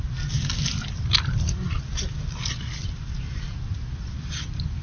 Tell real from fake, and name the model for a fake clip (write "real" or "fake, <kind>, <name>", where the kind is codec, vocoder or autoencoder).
real